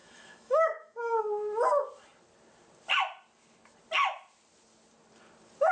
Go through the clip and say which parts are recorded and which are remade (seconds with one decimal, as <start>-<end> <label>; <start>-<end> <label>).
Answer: 0.0-1.2 remade; 1.2-5.7 recorded